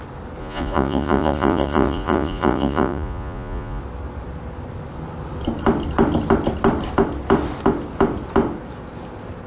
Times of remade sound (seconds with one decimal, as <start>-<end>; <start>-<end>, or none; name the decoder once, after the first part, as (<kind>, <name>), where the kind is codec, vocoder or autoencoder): 0.4-3.8 (vocoder, Vocos)